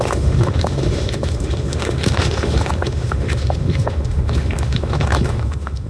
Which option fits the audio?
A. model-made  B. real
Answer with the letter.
A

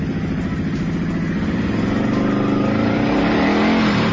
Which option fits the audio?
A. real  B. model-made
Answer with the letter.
A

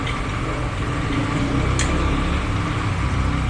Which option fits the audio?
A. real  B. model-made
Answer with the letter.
A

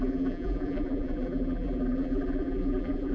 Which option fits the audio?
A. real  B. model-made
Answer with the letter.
B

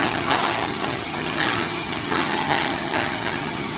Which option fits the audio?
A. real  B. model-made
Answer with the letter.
B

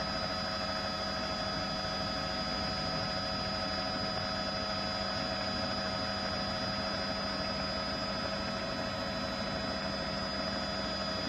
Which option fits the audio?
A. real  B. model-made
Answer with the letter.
A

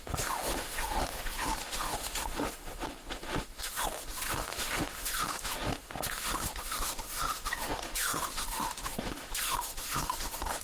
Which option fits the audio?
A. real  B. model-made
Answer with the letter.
B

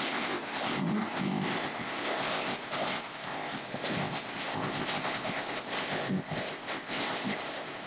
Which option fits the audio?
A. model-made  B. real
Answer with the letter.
A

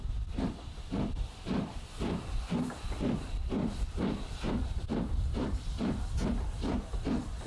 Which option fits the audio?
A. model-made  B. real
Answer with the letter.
A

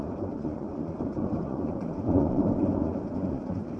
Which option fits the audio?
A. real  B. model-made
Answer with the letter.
B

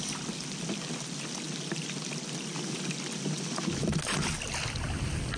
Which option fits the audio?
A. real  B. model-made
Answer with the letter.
A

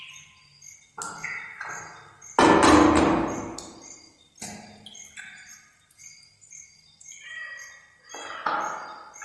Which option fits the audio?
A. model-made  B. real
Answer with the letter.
B